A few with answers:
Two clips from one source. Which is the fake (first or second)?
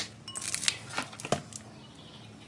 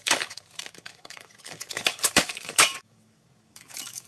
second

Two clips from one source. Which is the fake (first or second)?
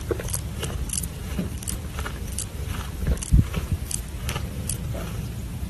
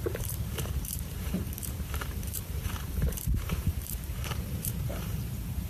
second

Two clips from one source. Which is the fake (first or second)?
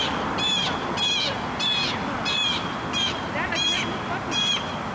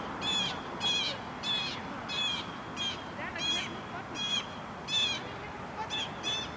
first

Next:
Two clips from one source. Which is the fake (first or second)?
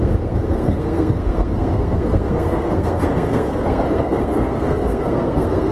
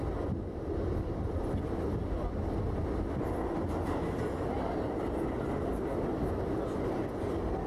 first